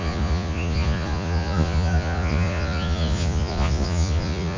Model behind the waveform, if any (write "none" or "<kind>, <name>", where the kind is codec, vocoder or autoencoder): vocoder, Vocos